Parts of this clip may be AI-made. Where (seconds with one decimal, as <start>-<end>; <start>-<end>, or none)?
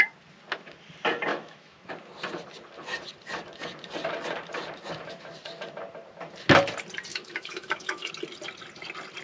1.3-1.9; 7.1-8.1